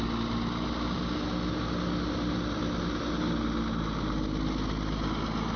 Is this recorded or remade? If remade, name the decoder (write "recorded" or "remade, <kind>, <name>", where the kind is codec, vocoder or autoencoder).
recorded